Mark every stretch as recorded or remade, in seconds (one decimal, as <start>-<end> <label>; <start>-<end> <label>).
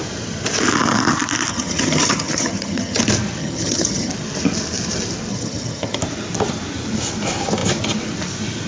0.0-1.5 recorded; 1.5-3.0 remade; 3.0-3.4 recorded; 3.4-4.1 remade; 4.1-5.3 recorded; 5.3-6.0 remade; 6.0-8.7 recorded